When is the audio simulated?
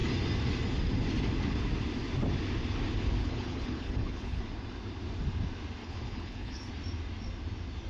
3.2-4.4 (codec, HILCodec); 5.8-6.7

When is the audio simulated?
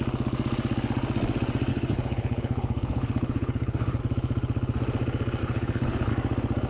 1.7-4.0 (codec, HILCodec); 5.4-6.1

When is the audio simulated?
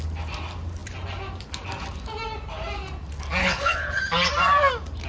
3.4-4.0 (codec, HILCodec)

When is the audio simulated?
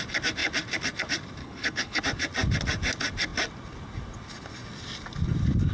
1.4-2.0 (codec, HILCodec)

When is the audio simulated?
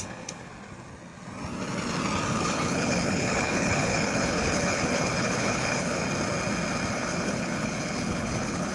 0.0-0.5 (codec, HILCodec); 2.3-6.0; 6.9-8.7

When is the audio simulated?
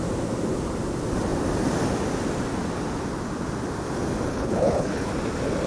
4.3-5.1 (codec, HILCodec)